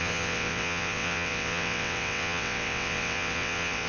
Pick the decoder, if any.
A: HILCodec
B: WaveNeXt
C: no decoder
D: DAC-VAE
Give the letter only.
B